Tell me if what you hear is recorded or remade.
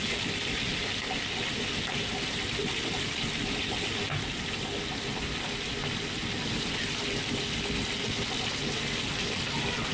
recorded